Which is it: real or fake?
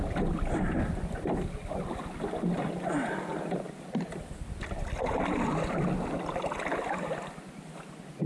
real